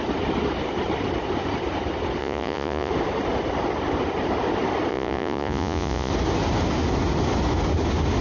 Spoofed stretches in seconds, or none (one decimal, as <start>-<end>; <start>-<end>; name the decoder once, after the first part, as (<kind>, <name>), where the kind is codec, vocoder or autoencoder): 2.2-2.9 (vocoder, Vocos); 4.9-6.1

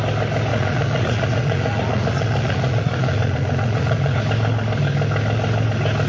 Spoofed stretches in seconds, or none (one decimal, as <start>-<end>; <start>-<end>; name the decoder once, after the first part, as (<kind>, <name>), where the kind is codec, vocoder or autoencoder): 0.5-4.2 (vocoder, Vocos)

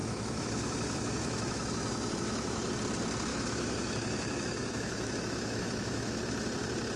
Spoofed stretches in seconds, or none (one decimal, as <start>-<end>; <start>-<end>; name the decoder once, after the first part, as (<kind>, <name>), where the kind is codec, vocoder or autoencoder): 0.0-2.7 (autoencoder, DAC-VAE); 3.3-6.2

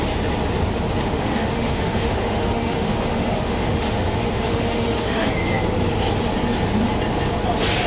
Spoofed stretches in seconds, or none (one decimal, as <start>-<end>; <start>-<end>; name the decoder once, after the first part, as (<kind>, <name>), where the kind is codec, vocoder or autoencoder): 1.0-5.3 (autoencoder, DAC-VAE)